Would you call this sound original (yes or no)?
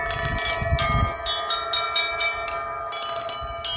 yes